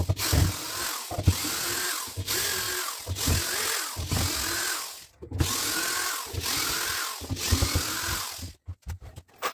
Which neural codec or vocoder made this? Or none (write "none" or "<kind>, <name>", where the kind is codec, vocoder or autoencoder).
none